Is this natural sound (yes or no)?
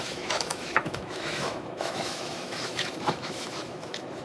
no